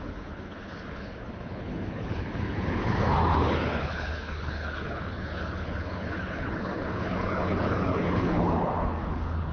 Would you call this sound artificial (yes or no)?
yes